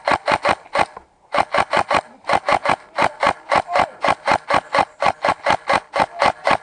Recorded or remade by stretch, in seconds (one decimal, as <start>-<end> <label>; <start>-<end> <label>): 0.0-6.6 recorded